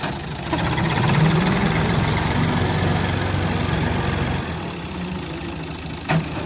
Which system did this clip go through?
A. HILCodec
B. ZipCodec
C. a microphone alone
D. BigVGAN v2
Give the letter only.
C